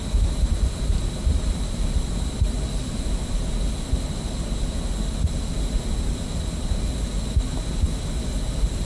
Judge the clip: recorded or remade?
recorded